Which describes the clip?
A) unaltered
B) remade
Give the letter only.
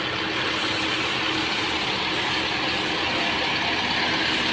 A